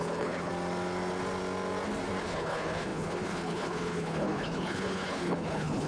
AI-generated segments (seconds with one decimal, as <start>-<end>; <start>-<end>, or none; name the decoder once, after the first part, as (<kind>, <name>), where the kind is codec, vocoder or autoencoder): 0.0-0.5 (codec, HILCodec); 2.2-5.9